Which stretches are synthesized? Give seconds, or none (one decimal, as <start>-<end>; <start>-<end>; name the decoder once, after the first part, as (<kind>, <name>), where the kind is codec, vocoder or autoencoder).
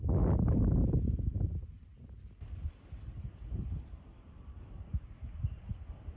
none